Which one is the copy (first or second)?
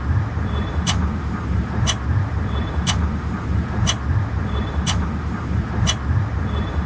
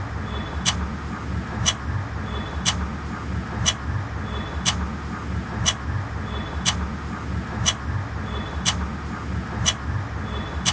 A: first